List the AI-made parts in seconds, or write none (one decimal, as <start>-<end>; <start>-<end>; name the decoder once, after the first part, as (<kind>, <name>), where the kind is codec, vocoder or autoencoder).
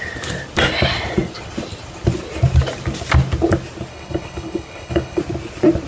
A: 3.9-5.2 (codec, HILCodec)